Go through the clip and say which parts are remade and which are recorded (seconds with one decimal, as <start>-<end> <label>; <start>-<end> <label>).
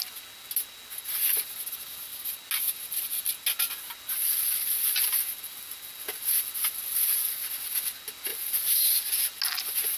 0.0-8.3 recorded; 8.3-9.1 remade; 9.1-10.0 recorded